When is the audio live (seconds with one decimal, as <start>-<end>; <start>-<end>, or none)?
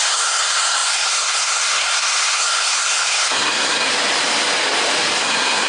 3.9-5.2